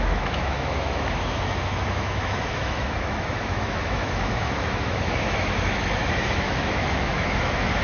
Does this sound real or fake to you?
fake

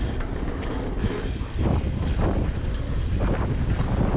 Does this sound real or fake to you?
real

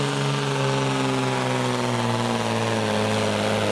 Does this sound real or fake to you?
real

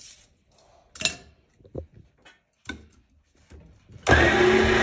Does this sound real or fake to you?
real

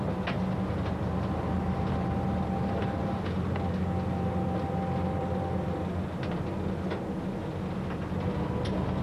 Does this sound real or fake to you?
real